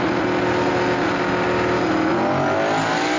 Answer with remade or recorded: recorded